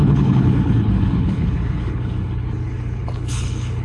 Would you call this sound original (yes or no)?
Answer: no